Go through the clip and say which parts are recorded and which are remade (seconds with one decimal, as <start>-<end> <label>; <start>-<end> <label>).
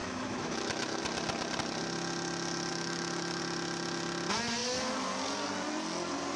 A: 0.0-1.0 remade; 1.0-2.7 recorded; 2.7-3.4 remade; 3.4-6.4 recorded